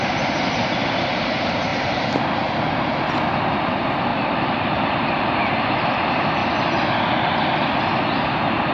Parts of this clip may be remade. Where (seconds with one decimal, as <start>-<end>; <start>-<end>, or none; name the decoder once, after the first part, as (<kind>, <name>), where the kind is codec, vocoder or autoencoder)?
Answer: 4.1-5.6 (vocoder, BigVGAN v2)